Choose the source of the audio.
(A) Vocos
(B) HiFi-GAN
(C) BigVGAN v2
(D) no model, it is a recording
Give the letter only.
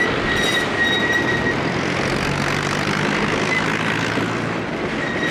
D